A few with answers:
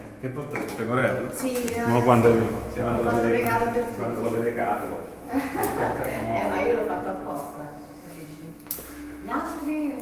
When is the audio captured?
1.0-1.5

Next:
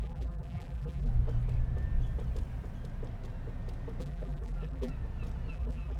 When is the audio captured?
1.1-4.0; 4.9-5.5

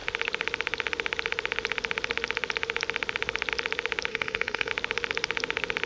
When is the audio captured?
0.0-4.1; 4.7-5.9

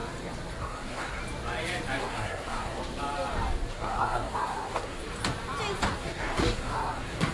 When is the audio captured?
0.0-0.6; 1.2-2.0; 2.8-3.7; 5.0-5.9

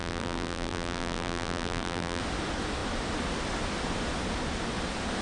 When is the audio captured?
2.2-5.2

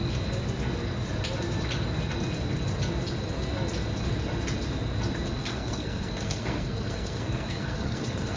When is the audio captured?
0.0-5.5

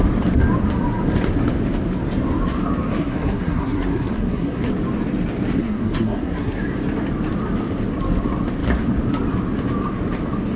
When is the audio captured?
0.0-2.9; 4.7-5.6; 6.6-10.6